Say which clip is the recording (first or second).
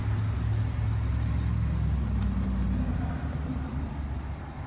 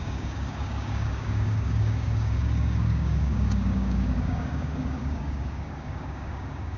first